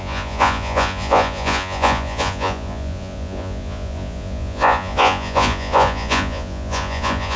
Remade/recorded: remade